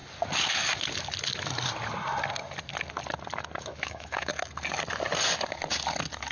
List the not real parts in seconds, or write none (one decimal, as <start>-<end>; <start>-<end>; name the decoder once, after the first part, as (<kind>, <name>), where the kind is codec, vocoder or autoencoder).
3.6-4.3 (autoencoder, DAC-VAE)